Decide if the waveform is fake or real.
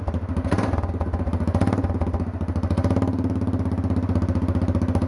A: real